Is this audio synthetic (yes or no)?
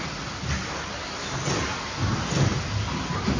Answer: no